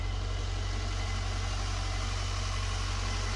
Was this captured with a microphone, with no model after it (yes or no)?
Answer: yes